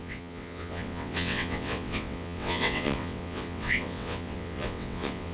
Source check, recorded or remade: remade